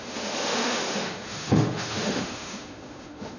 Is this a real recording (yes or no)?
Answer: no